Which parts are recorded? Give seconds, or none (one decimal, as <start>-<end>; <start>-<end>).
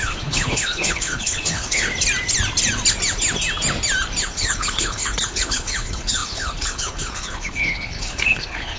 1.9-4.2